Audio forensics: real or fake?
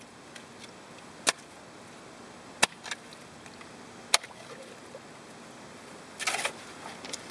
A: real